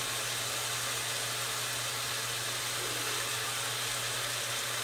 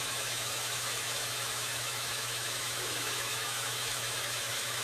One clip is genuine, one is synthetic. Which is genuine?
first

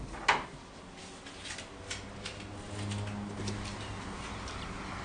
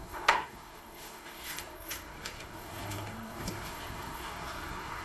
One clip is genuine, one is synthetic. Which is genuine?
first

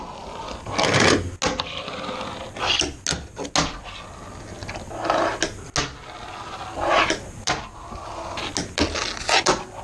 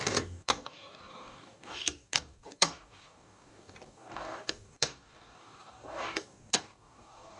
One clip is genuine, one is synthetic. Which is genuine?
first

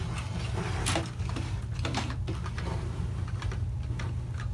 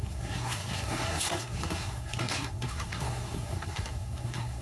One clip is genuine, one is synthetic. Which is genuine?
first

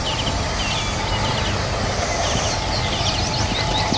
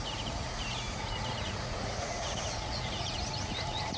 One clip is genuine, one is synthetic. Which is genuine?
first